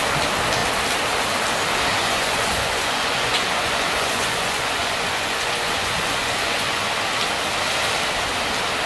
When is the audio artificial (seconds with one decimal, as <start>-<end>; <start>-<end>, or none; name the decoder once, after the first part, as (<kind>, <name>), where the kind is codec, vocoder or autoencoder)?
2.0-6.9 (vocoder, Vocos)